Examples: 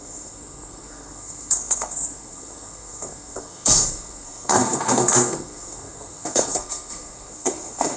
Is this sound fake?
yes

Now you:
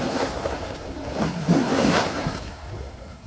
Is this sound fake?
yes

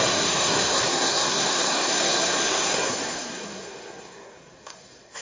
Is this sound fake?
yes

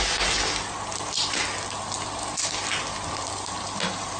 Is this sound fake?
no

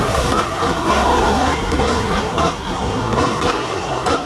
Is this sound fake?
yes